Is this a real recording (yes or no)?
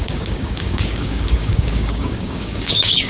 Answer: no